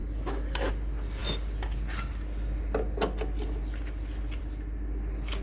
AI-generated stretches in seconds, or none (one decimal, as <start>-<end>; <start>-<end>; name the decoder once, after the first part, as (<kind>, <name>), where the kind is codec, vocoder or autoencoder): 0.0-0.7 (codec, DAC)